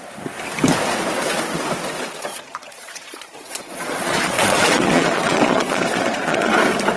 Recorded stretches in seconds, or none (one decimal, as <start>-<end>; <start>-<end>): 0.0-2.3; 6.5-7.0